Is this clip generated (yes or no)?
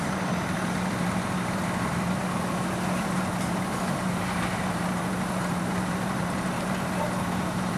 yes